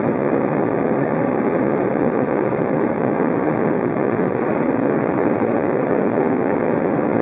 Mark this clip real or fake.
fake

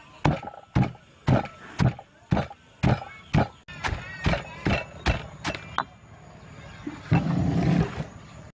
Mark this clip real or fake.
real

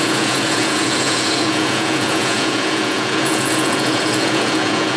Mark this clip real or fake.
fake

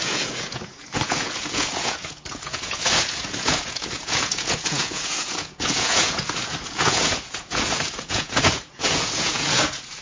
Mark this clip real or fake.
fake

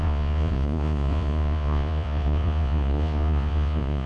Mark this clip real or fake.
fake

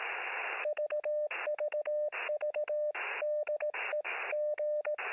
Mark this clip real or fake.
real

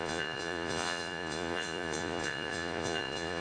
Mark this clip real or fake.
fake